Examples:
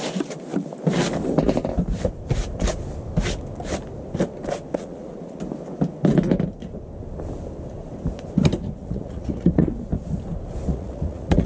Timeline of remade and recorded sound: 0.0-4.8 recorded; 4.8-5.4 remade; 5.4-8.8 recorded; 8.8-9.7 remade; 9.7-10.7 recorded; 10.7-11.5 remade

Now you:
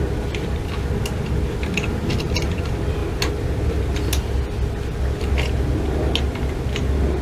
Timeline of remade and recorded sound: 0.0-7.2 recorded

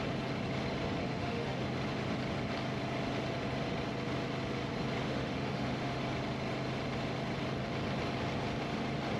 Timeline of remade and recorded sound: 0.0-1.0 recorded; 1.0-1.6 remade; 1.6-5.0 recorded; 5.0-6.0 remade; 6.0-9.2 recorded